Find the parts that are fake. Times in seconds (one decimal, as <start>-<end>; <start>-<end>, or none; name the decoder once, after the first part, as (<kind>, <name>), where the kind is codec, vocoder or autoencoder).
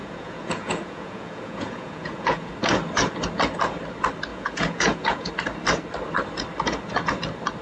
0.0-2.5 (vocoder, Vocos); 4.3-5.3